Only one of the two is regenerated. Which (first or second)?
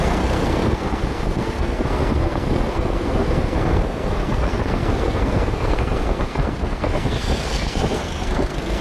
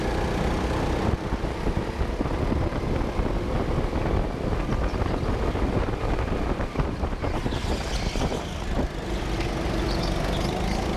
first